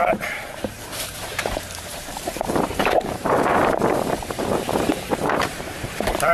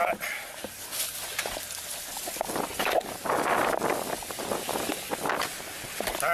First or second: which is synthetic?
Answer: first